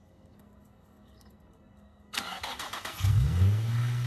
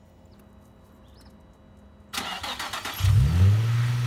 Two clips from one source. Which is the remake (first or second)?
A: first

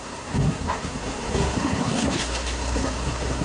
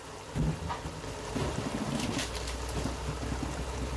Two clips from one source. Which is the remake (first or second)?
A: first